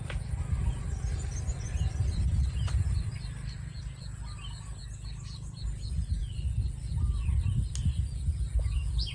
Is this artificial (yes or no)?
no